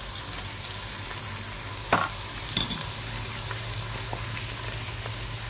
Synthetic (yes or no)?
no